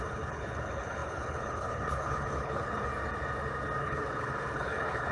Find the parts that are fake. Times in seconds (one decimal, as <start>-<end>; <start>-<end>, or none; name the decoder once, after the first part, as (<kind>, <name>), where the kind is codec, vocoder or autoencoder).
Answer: 0.0-2.9 (codec, HILCodec); 3.8-5.1

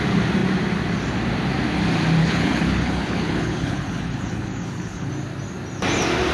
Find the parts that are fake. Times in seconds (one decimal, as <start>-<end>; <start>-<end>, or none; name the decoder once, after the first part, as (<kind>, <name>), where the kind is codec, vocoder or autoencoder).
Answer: 2.2-5.1 (codec, HILCodec)

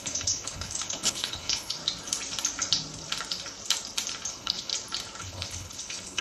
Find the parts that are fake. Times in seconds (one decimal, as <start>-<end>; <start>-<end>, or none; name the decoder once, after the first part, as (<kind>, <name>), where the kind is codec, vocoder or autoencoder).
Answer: 0.0-1.8 (codec, HILCodec); 4.3-4.7; 5.2-6.2